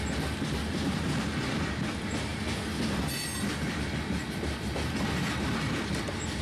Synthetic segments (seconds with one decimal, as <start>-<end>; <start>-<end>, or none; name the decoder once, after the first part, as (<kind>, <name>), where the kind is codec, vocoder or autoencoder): none